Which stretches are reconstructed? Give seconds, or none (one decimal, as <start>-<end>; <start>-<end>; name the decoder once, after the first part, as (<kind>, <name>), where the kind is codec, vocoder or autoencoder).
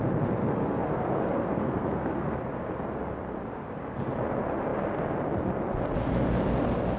0.4-2.4 (codec, SNAC)